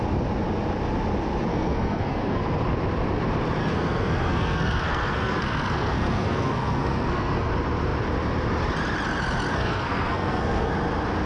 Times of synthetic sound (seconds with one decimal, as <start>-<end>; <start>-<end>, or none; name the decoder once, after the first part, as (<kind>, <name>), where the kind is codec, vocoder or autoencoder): 1.5-2.4 (codec, SNAC); 3.6-7.5; 9.5-10.7